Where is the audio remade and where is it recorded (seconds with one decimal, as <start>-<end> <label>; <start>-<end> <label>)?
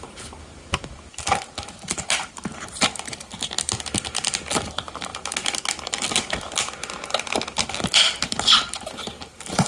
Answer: 0.0-9.7 recorded